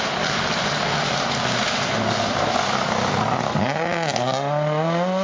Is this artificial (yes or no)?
no